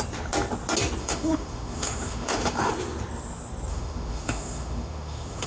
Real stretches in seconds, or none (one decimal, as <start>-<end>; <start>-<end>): 0.0-1.0; 2.7-3.7